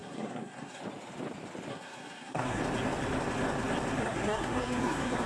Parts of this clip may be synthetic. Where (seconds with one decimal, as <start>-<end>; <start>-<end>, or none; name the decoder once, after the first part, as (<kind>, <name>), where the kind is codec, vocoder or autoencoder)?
0.0-0.8 (codec, SNAC); 1.7-2.6; 4.0-5.3

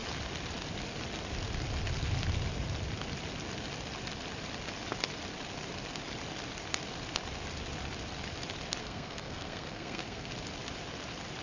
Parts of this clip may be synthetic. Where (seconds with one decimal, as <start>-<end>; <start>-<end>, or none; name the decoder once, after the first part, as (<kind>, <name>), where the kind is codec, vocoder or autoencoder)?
8.8-10.3 (codec, SNAC)

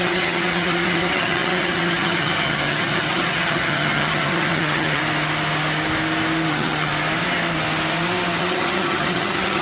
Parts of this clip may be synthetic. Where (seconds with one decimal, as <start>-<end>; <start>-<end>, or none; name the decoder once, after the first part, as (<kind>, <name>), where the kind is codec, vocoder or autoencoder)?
0.0-5.0 (vocoder, HiFi-GAN); 6.5-6.9; 8.4-9.6